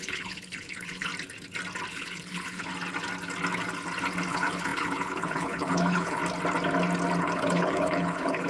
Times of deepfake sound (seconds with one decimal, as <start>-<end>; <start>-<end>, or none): 0.0-1.1; 1.9-2.7; 4.3-6.2; 7.2-8.5